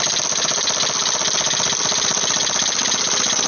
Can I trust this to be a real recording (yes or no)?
yes